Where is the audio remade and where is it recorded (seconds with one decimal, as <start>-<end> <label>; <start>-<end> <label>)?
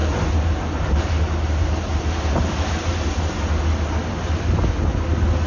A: 0.0-3.3 remade; 3.3-4.0 recorded; 4.0-4.6 remade; 4.6-5.5 recorded